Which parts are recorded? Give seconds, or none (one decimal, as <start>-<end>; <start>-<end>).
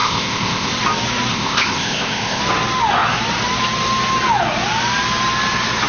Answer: 0.7-1.3; 2.4-5.9